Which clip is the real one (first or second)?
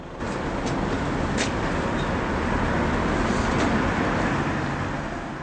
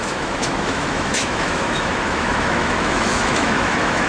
first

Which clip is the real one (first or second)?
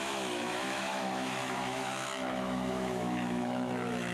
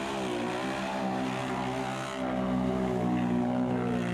second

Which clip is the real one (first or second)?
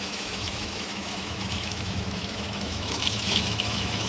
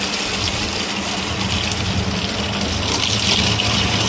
second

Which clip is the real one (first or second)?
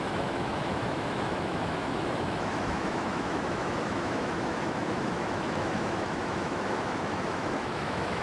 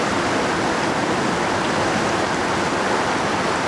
second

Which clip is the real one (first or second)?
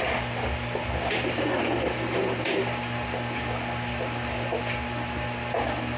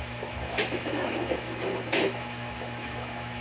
first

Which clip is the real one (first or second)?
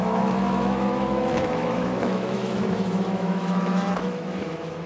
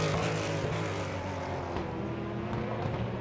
second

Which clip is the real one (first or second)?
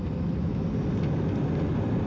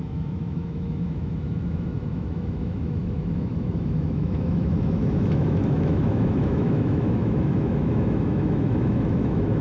first